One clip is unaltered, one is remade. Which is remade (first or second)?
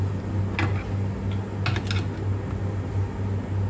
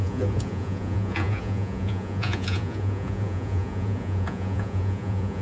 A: second